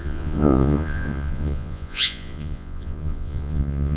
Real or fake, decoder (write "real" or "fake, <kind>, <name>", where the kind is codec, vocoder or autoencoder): fake, vocoder, Vocos